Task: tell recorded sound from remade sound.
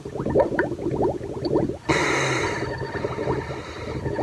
recorded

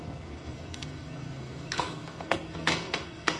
remade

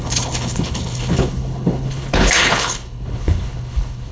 remade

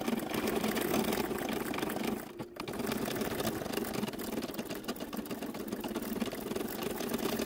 recorded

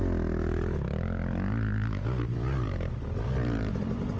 recorded